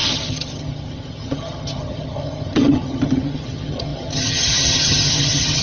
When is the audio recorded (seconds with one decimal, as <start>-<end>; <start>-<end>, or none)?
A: none